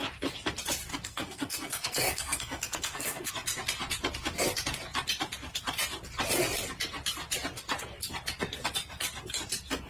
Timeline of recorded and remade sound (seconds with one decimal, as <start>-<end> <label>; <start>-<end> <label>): 0.0-0.9 recorded; 0.9-3.3 remade; 3.3-9.9 recorded